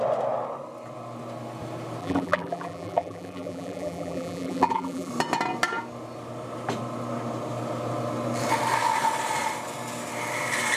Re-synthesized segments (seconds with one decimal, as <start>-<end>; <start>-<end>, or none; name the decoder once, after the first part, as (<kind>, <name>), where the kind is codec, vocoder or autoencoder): 2.0-5.1 (vocoder, BigVGAN v2)